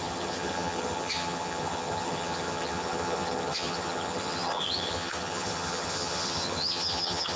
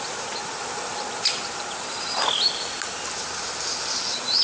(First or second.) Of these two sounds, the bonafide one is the second